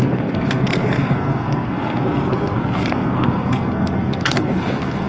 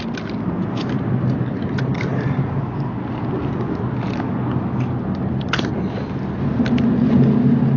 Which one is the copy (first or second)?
first